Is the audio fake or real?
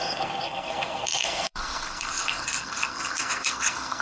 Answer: fake